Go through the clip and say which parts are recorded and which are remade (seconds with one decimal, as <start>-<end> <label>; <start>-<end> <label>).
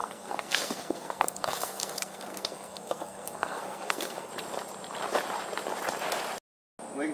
0.0-4.3 remade; 4.3-7.1 recorded